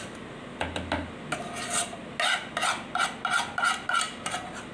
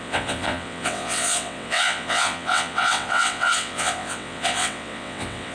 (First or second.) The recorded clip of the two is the first